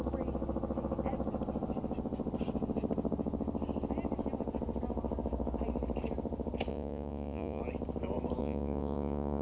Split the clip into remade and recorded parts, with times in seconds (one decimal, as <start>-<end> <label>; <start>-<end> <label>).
0.0-6.7 recorded; 6.7-7.6 remade; 7.6-8.4 recorded; 8.4-9.4 remade